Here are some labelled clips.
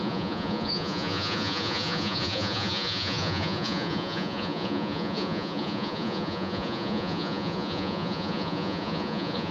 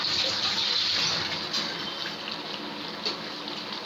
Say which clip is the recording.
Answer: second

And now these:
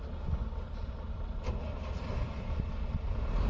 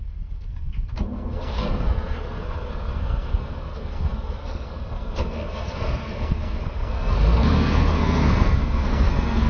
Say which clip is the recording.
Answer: first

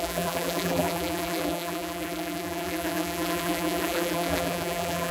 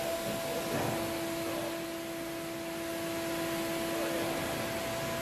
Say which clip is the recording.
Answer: second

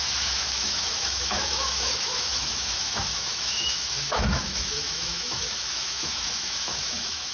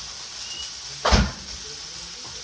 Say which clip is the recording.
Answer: second